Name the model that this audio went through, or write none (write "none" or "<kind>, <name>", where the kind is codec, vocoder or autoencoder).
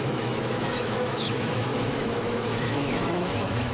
autoencoder, DAC-VAE